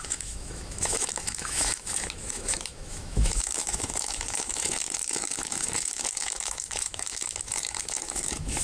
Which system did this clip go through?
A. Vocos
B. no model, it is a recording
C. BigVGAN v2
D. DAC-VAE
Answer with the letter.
D